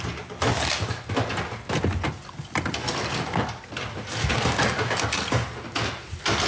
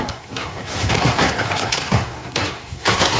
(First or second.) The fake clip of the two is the second